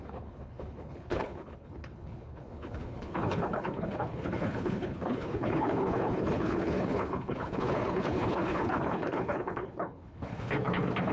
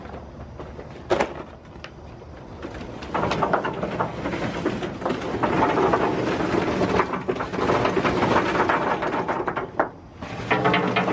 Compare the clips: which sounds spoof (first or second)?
first